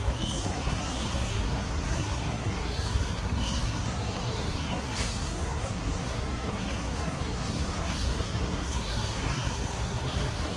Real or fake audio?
fake